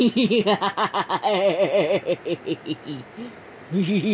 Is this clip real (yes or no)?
yes